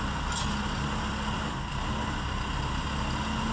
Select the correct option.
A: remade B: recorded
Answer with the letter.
B